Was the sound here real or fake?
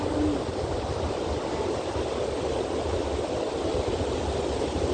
real